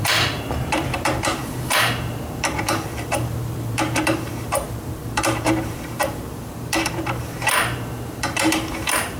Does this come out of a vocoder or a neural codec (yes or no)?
yes